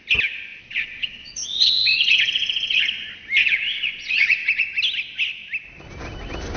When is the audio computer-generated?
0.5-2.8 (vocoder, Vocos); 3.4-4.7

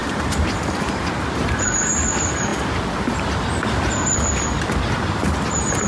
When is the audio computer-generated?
0.0-1.1 (vocoder, BigVGAN v2)

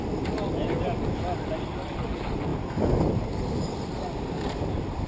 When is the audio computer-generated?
none